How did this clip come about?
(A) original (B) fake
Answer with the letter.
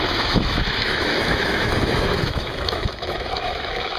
B